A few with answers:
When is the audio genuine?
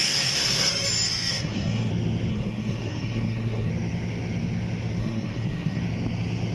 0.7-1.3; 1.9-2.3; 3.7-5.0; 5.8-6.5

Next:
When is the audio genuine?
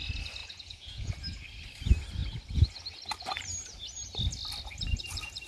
0.0-0.4; 1.1-5.5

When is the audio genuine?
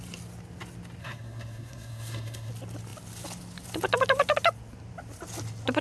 0.0-1.0; 2.5-5.8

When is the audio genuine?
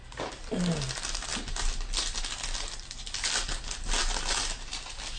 0.0-5.2